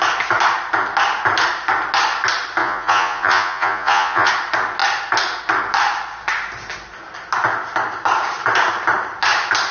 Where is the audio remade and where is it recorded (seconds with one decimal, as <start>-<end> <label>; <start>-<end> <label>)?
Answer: 0.0-2.6 recorded; 2.6-4.3 remade; 4.3-9.7 recorded